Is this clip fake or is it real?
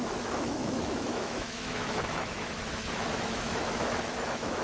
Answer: fake